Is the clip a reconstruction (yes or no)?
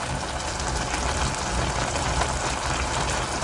no